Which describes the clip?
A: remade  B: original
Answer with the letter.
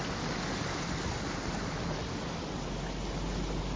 B